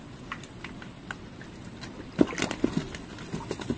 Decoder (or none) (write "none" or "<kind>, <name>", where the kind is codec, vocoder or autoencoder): none